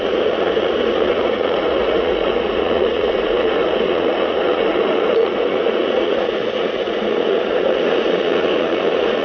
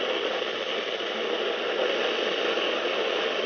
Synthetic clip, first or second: first